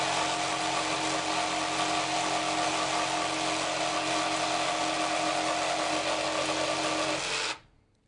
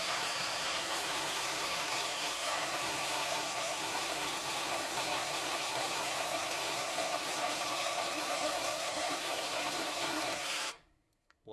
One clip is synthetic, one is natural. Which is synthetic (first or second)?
second